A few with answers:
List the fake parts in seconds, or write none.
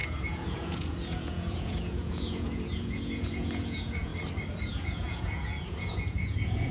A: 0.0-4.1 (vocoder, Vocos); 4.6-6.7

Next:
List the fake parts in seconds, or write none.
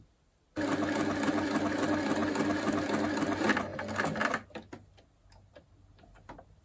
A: none